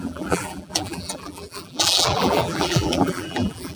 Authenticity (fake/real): fake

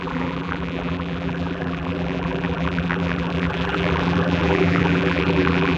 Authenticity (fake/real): fake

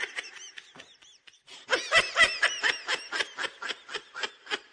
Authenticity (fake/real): real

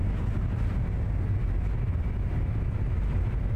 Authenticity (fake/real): real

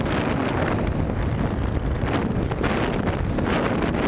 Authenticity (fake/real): real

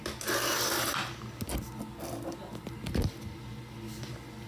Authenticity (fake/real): real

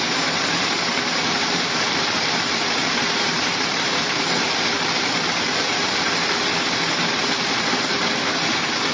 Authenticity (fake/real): fake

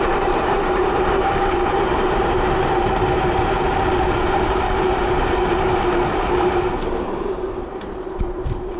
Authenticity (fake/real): fake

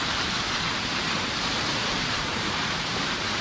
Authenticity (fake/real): fake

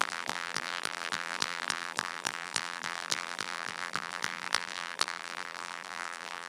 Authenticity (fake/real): fake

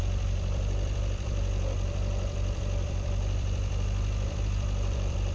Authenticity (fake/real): fake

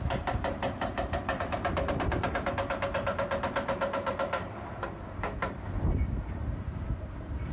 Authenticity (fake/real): fake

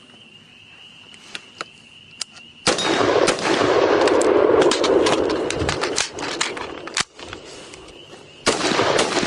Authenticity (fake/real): fake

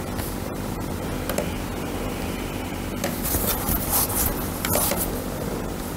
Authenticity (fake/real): real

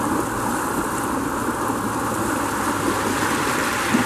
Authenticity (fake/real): real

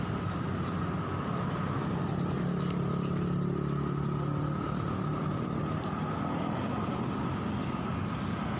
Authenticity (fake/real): real